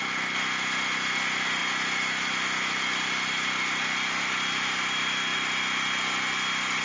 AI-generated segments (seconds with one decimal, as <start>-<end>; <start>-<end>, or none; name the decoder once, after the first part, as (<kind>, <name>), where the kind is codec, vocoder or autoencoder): none